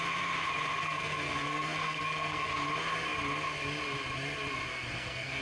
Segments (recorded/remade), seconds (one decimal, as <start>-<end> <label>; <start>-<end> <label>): 0.0-0.8 recorded; 0.8-2.5 remade; 2.5-4.7 recorded; 4.7-5.4 remade